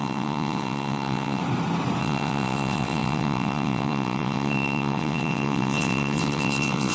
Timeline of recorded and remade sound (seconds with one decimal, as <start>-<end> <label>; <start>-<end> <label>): 0.0-1.4 remade; 1.4-2.0 recorded; 2.0-6.9 remade